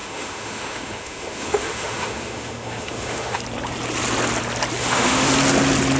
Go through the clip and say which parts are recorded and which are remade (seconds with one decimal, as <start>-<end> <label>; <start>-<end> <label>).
0.0-3.4 remade; 3.4-4.8 recorded; 4.8-5.3 remade; 5.3-6.0 recorded